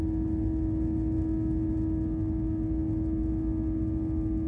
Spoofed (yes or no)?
no